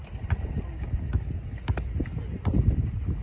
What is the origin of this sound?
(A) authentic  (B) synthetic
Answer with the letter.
A